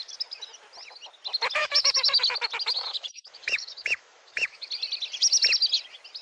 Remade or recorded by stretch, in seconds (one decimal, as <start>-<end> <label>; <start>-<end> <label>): 0.0-1.6 recorded; 1.6-2.2 remade; 2.2-2.7 recorded; 2.7-4.7 remade; 4.7-6.2 recorded